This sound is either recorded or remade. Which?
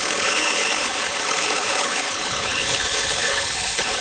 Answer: remade